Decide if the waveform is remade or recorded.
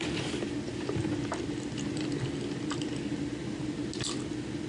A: recorded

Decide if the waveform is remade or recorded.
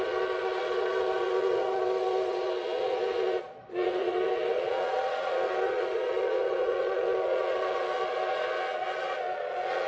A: remade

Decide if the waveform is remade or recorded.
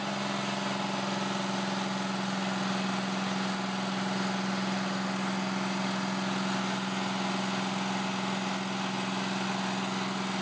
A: recorded